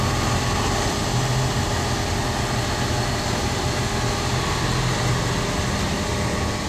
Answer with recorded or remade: recorded